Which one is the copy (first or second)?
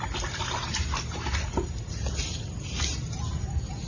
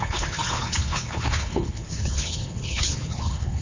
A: second